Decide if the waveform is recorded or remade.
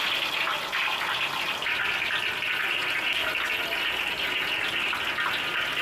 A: recorded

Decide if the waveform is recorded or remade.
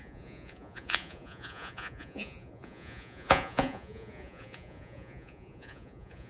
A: remade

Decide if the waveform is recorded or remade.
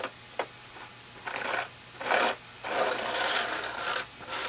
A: recorded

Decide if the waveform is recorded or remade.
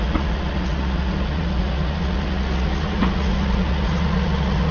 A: remade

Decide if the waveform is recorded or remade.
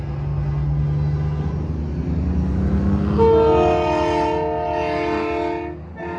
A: recorded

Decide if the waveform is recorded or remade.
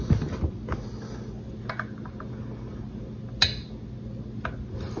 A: recorded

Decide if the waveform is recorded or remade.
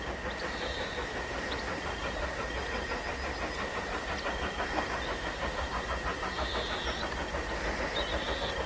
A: recorded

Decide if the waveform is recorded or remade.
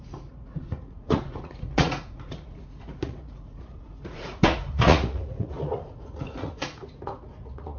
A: remade